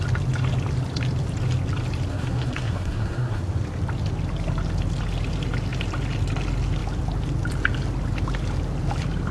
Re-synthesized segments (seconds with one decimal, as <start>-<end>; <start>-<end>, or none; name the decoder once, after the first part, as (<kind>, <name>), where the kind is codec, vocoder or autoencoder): 2.1-3.4 (codec, SNAC)